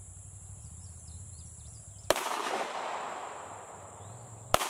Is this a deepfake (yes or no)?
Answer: yes